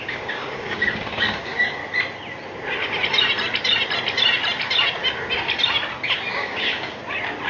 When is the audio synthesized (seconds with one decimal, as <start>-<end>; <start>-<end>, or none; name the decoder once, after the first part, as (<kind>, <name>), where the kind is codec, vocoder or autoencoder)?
0.0-1.8 (codec, DAC); 6.3-7.0